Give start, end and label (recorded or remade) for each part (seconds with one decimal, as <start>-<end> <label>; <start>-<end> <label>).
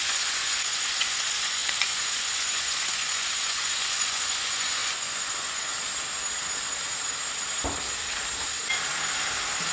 0.0-5.7 remade; 5.7-9.7 recorded